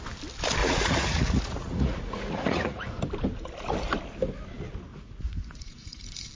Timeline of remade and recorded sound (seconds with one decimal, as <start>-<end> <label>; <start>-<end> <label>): 0.0-0.6 recorded; 0.6-2.9 remade; 2.9-4.9 recorded; 4.9-6.3 remade